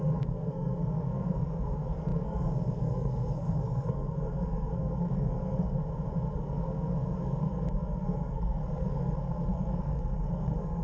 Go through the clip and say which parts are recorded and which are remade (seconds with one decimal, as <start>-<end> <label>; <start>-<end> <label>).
0.0-5.8 remade; 5.8-6.3 recorded; 6.3-10.8 remade